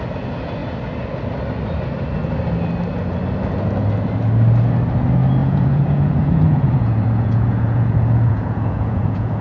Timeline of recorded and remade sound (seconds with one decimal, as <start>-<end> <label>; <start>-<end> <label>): 0.0-5.4 recorded; 5.4-9.4 remade